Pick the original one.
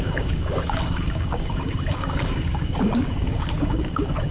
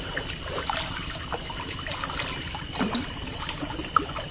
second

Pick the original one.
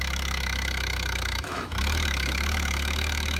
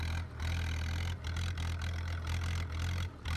second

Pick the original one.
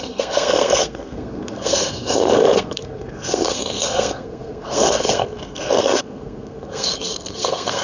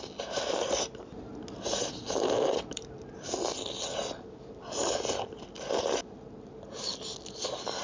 second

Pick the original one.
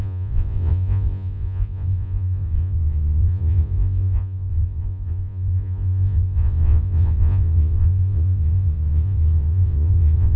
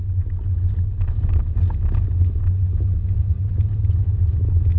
second